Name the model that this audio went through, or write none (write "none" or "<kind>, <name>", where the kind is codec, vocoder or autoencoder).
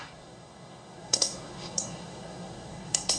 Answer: codec, SNAC